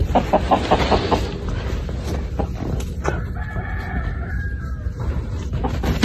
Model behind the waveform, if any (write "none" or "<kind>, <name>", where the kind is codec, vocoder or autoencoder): none